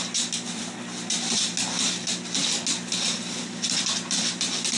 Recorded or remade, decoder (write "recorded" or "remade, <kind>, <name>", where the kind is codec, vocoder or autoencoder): recorded